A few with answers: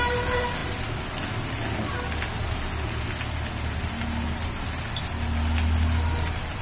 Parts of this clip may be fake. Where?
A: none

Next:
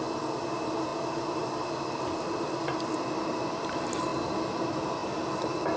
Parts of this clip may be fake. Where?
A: none

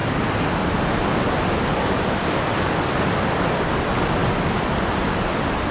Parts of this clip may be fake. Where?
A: none

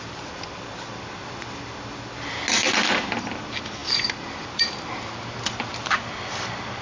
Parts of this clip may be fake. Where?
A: none